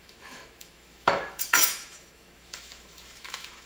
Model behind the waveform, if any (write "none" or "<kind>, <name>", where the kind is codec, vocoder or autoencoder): autoencoder, DAC-VAE